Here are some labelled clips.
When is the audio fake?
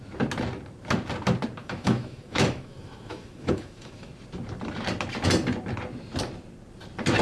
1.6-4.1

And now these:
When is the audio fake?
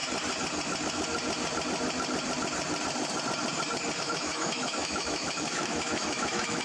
4.0-6.6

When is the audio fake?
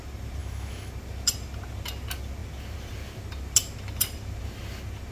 0.4-0.9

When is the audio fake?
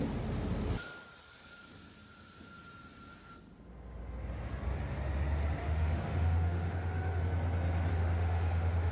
5.6-7.2; 7.9-8.9